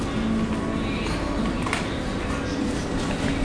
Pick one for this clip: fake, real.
real